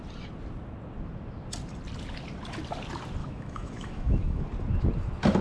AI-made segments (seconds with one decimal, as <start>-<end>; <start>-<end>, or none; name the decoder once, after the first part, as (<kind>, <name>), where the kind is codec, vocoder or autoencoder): 3.2-4.4 (autoencoder, DAC-VAE)

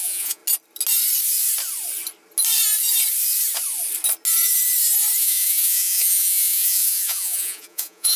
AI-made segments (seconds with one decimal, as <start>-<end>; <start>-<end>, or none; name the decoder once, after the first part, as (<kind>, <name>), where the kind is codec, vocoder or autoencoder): 0.0-0.4 (vocoder, Vocos); 5.2-8.2

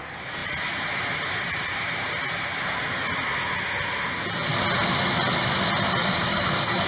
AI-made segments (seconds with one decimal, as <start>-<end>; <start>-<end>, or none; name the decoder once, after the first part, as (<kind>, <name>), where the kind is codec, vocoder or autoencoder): 6.0-6.9 (codec, DAC)

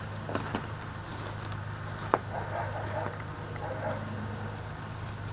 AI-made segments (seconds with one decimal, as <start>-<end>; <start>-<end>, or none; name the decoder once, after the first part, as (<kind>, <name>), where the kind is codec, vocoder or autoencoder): none

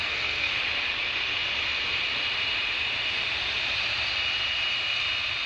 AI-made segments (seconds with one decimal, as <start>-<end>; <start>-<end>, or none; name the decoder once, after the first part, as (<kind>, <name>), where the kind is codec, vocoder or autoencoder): 0.0-0.5 (codec, SNAC)